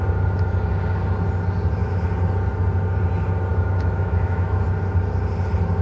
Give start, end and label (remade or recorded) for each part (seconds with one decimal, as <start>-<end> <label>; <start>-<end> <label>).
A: 0.0-3.5 recorded; 3.5-4.6 remade; 4.6-5.8 recorded